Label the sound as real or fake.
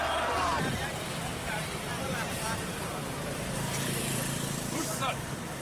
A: fake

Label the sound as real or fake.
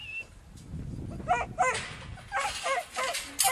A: real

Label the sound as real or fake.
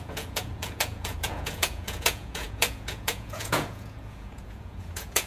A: fake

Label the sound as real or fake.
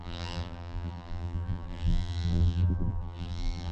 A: fake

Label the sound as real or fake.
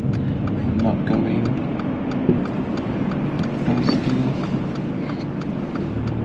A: real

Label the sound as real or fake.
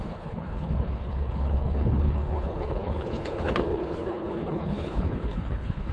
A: fake